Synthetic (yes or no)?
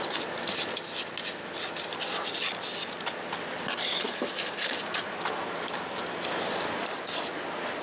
no